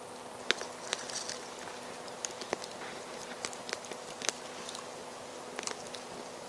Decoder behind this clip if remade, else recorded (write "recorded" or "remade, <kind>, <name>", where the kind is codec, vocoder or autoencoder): recorded